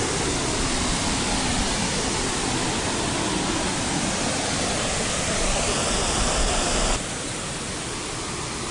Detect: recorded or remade recorded